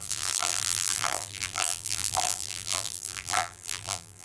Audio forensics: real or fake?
fake